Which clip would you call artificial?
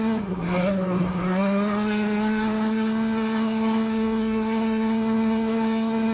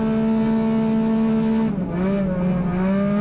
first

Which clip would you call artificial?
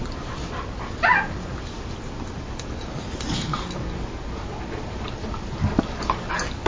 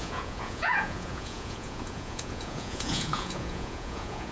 second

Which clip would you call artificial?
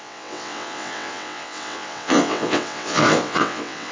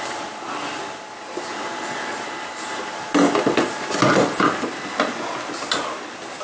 first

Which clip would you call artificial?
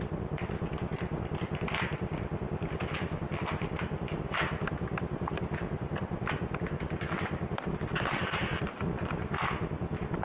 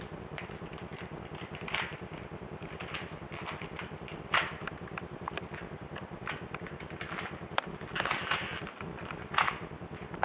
second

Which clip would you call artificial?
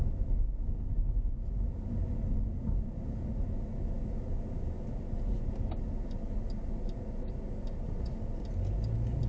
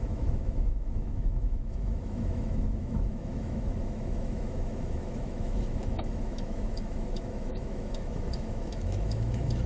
second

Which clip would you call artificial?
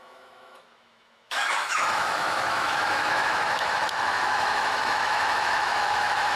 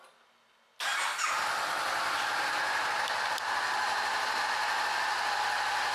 first